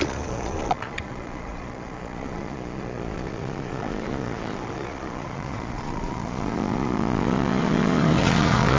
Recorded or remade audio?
remade